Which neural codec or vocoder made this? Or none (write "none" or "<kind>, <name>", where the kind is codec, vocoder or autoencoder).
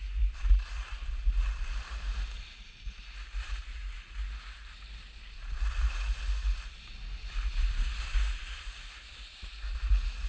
none